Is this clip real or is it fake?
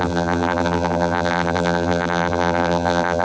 fake